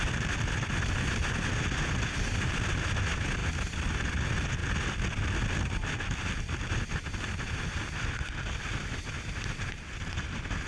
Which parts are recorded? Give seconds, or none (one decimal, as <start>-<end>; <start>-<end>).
0.0-10.7